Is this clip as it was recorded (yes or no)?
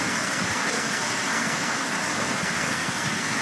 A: no